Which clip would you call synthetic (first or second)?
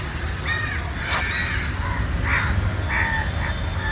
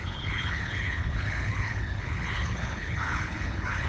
second